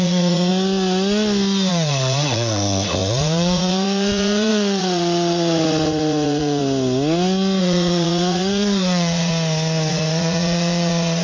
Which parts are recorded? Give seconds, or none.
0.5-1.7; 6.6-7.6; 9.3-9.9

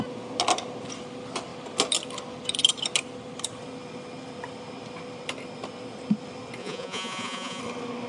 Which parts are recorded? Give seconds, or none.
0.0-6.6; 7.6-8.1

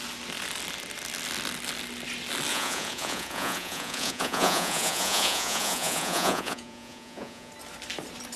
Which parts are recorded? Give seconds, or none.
0.0-2.5; 7.5-8.4

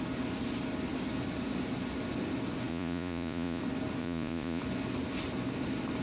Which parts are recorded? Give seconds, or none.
0.0-2.7; 3.6-4.0; 4.6-6.0